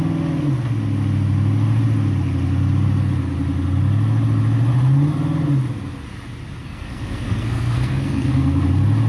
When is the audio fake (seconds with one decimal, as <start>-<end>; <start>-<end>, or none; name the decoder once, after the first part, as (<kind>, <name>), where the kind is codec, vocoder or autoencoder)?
6.6-8.6 (codec, SNAC)